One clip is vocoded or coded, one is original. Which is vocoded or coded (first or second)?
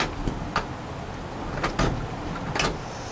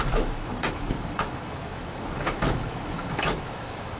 second